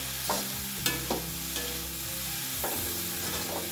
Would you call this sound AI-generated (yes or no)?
no